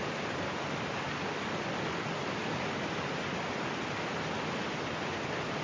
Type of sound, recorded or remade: recorded